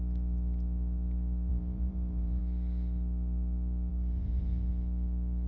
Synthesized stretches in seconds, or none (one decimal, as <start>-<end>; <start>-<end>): 1.5-2.4; 3.9-4.4